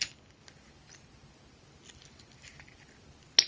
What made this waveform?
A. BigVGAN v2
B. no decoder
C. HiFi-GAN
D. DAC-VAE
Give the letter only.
B